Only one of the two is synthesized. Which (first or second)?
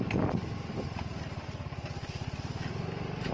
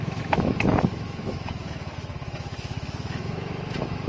second